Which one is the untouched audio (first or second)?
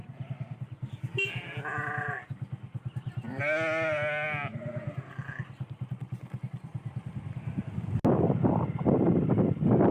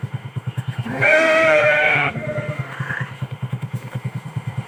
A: first